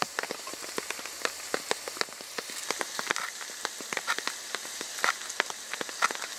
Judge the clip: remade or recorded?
recorded